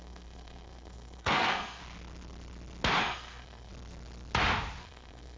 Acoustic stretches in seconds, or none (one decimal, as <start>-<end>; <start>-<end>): 1.8-3.0; 3.7-4.8